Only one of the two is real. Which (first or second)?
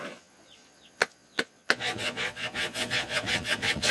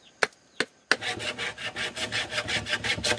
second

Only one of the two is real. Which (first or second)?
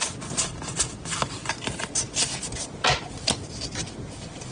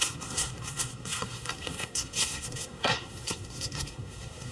first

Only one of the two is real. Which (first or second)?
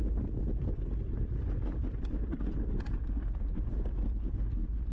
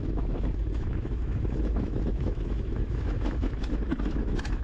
first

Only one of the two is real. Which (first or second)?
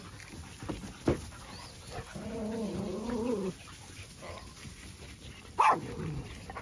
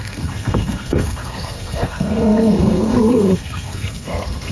first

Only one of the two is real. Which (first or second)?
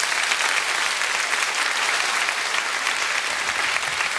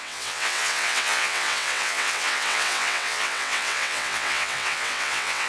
first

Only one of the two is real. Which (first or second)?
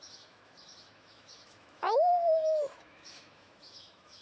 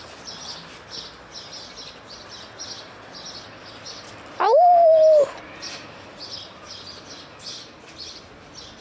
second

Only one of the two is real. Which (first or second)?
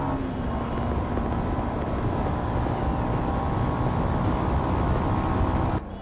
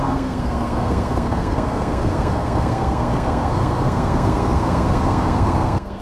first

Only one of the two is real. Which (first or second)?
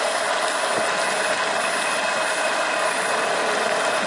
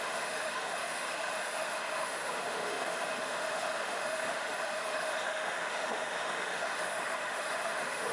first